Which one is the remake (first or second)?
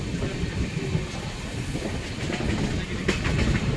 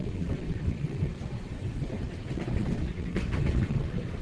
second